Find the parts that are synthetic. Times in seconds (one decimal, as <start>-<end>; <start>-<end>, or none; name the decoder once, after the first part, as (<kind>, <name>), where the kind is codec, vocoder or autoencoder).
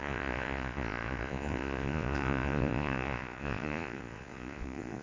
0.0-5.0 (vocoder, Vocos)